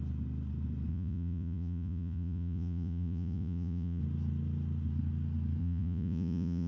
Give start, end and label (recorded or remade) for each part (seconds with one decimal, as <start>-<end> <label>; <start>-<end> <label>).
0.0-0.9 recorded; 0.9-4.0 remade; 4.0-5.6 recorded; 5.6-6.7 remade